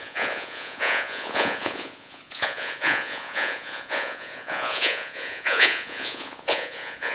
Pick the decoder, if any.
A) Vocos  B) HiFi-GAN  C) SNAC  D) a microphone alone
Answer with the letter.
A